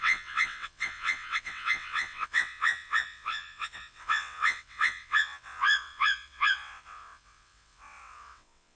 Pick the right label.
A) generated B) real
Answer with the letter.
A